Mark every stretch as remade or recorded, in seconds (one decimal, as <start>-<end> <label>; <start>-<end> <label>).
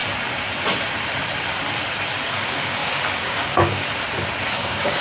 0.0-2.3 recorded; 2.3-3.8 remade; 3.8-4.6 recorded; 4.6-5.0 remade